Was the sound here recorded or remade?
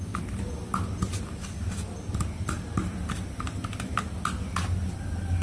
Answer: recorded